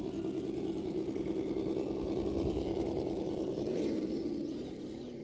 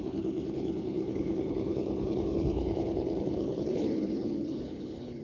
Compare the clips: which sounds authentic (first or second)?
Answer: first